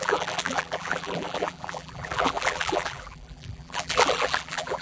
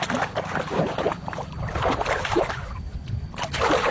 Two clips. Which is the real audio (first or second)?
second